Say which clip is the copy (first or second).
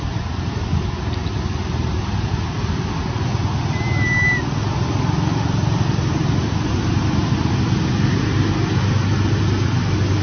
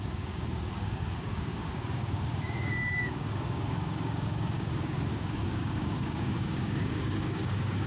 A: second